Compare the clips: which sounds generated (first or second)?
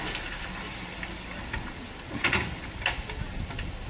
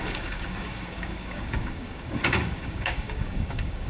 second